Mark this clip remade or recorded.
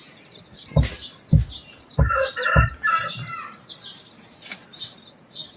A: remade